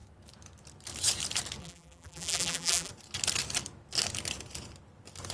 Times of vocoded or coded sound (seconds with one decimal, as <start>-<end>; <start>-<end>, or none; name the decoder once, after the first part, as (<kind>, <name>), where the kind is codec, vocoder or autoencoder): 1.6-2.9 (vocoder, BigVGAN v2)